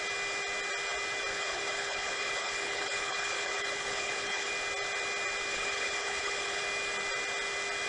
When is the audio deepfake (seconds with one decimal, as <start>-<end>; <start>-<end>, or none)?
1.3-4.5; 5.5-6.6